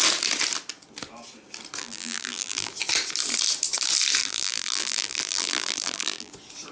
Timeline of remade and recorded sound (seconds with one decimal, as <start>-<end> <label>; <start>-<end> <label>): 0.0-1.8 recorded; 1.8-2.7 remade; 2.7-4.2 recorded; 4.2-6.3 remade; 6.3-6.7 recorded

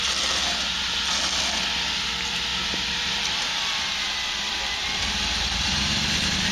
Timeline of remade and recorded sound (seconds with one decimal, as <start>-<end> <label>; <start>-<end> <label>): 0.0-2.5 recorded; 2.5-6.5 remade

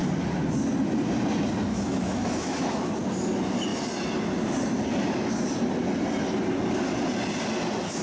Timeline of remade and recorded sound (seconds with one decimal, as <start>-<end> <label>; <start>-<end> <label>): 0.0-1.7 recorded; 1.7-2.9 remade; 2.9-8.0 recorded

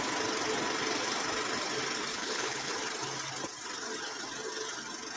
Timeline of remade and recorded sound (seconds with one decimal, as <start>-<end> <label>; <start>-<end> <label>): 0.0-2.1 recorded; 2.1-2.7 remade; 2.7-5.2 recorded

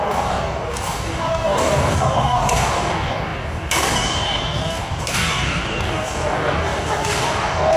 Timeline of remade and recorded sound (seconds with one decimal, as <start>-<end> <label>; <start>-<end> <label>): 0.0-7.8 remade

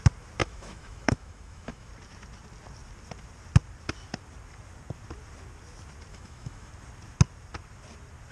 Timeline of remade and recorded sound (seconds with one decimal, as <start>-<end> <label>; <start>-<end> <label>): 0.0-0.4 recorded; 0.4-1.9 remade; 1.9-6.1 recorded; 6.1-6.7 remade; 6.7-8.3 recorded